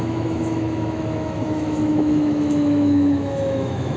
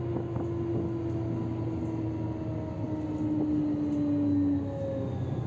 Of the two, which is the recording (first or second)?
second